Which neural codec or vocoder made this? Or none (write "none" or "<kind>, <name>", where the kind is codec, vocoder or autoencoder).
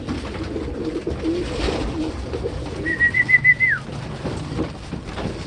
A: none